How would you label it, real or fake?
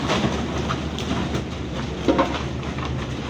real